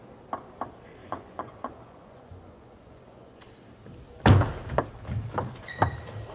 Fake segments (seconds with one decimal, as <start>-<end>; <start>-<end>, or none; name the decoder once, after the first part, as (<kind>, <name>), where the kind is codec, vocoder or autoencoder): 1.0-3.4 (vocoder, Vocos)